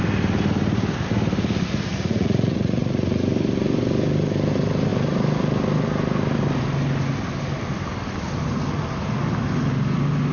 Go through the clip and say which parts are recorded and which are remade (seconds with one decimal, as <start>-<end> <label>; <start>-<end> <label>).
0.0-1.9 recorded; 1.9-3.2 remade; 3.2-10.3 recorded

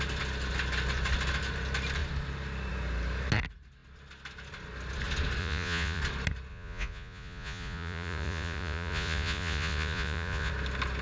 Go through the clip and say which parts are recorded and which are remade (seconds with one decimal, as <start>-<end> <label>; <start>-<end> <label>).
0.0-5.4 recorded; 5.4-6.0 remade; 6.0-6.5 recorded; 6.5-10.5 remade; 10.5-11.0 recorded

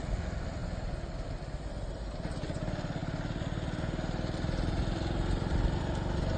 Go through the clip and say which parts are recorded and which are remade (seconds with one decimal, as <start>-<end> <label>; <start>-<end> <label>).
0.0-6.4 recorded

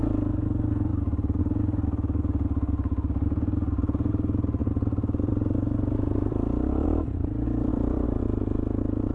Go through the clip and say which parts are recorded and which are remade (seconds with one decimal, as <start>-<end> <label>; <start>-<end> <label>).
0.0-0.9 recorded; 0.9-1.4 remade; 1.4-4.6 recorded; 4.6-8.2 remade; 8.2-9.1 recorded